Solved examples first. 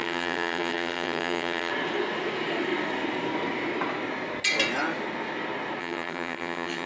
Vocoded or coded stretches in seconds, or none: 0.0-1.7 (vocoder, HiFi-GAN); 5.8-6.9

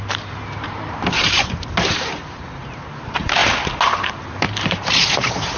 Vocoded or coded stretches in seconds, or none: 0.0-3.4 (vocoder, BigVGAN v2); 4.0-5.6

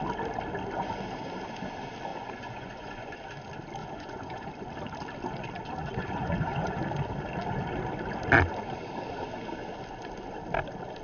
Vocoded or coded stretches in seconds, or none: 2.1-3.2 (vocoder, Vocos); 3.8-4.5; 6.0-6.8